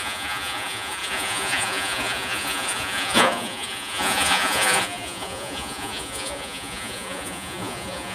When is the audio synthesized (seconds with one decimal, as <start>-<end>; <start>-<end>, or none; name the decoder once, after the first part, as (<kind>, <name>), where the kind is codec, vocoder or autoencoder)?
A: 0.0-8.1 (vocoder, Vocos)